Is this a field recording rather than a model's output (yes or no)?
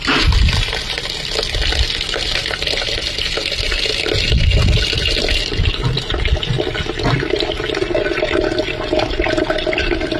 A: yes